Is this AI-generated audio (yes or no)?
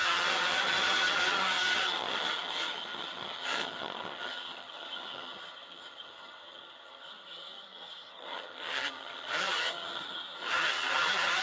yes